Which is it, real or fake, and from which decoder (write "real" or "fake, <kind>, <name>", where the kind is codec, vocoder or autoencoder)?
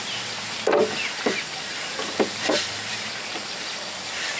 real